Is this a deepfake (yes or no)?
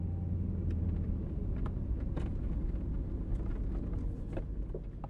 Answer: no